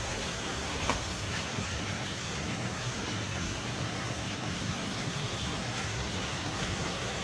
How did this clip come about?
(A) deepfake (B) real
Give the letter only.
A